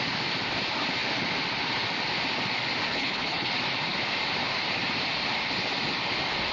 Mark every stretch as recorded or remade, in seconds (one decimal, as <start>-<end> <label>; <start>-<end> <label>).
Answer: 0.0-2.9 recorded; 2.9-3.5 remade; 3.5-6.5 recorded